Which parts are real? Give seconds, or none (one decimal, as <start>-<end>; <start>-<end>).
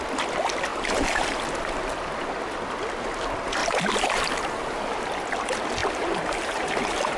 0.0-0.7; 1.8-3.6; 5.0-5.8